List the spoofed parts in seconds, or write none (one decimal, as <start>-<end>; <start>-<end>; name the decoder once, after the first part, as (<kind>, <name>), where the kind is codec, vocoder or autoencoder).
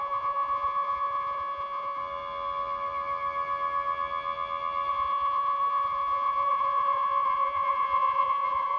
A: 0.0-2.0 (vocoder, Vocos); 4.9-8.8